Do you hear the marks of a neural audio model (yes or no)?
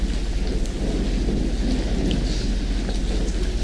no